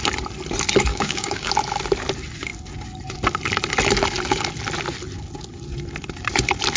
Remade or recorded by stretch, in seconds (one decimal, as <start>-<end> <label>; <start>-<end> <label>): 0.0-0.9 recorded; 0.9-1.5 remade; 1.5-6.8 recorded